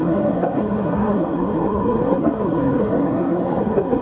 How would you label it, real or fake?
fake